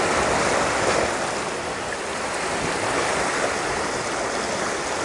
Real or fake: real